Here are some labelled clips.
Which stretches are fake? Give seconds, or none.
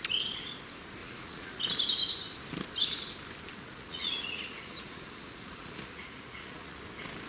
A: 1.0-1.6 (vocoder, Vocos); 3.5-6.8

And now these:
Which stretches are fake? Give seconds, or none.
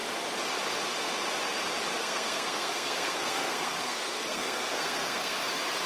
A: 2.0-5.5 (codec, SNAC)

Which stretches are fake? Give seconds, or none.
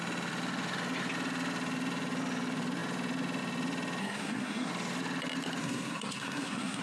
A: 4.0-4.7 (codec, SNAC); 5.6-6.8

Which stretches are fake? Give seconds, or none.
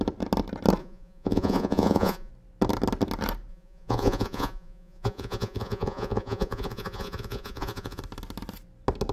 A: 0.8-2.3 (vocoder, Vocos); 3.5-8.0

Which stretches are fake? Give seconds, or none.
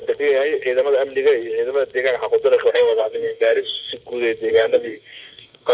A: 2.7-3.9 (codec, DAC); 4.5-5.7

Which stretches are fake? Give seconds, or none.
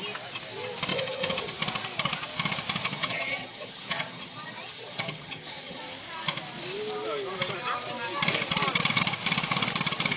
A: 0.9-1.6 (vocoder, HiFi-GAN); 2.8-5.8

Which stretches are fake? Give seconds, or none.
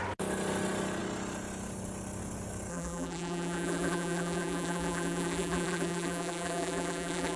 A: 2.7-7.4 (vocoder, BigVGAN v2)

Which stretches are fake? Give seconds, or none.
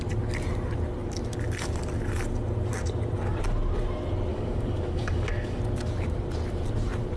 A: 4.3-5.6 (codec, DAC)